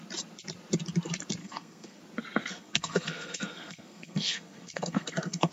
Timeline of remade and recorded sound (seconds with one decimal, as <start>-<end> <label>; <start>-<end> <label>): 0.0-1.4 recorded; 1.4-2.0 remade; 2.0-2.4 recorded; 2.4-5.5 remade